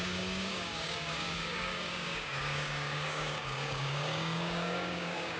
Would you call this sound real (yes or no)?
no